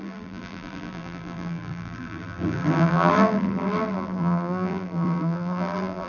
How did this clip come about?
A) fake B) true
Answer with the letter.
A